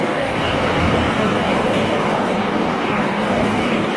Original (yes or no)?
no